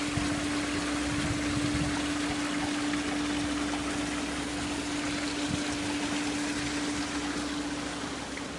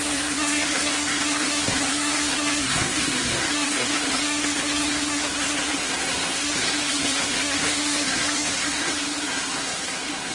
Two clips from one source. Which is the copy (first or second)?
second